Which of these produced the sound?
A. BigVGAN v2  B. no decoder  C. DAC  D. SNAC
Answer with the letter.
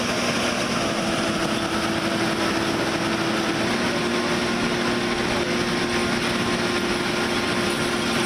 B